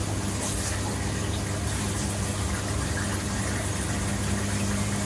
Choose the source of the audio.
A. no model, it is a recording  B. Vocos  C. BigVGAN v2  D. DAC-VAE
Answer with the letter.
A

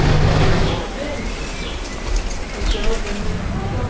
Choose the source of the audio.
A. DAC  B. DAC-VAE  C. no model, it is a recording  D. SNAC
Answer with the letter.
C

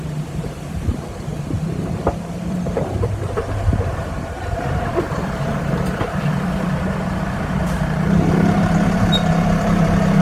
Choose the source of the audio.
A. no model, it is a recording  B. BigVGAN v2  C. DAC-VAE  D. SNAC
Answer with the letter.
B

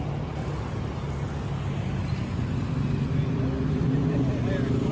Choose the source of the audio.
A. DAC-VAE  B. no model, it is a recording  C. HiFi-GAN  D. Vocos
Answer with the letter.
B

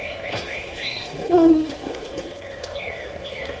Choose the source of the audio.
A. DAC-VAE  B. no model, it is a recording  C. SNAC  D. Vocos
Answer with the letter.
C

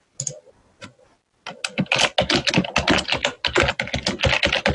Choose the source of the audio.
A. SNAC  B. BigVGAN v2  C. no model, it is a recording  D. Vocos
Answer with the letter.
C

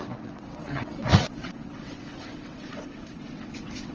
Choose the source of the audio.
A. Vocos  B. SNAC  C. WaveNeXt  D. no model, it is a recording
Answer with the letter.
C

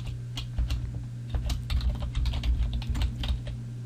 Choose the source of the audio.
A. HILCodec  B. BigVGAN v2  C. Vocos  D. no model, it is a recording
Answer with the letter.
D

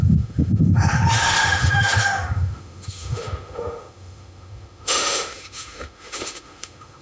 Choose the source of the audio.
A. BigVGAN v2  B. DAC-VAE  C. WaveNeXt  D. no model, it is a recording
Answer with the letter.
B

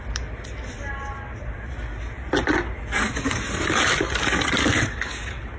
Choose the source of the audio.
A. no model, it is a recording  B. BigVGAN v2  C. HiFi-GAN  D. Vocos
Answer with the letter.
A